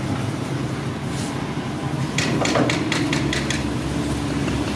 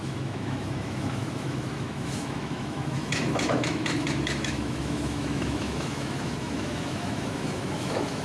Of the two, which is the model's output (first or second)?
second